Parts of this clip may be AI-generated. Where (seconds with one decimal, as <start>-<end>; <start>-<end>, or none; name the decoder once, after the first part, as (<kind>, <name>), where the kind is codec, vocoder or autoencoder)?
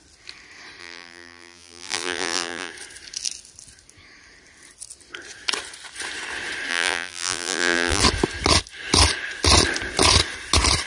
0.8-2.7 (vocoder, BigVGAN v2); 6.7-8.0